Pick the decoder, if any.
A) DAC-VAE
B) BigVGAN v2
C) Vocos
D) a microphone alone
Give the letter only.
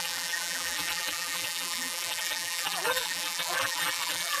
B